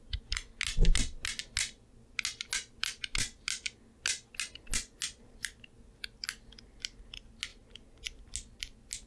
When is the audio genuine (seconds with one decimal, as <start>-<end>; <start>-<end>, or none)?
0.0-9.1